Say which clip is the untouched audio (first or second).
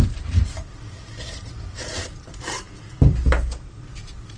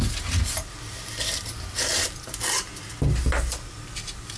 second